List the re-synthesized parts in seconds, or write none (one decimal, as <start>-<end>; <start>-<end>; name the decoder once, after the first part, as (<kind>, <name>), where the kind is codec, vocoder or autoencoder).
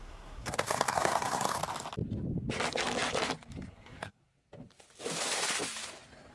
0.0-1.6 (codec, SNAC); 3.7-4.2